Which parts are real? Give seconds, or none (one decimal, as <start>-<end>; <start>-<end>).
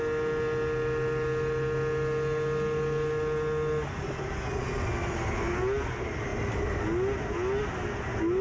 0.0-8.4